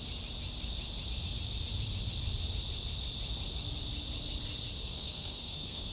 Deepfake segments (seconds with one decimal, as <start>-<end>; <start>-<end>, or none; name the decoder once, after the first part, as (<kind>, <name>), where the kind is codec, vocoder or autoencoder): 4.8-5.9 (codec, SNAC)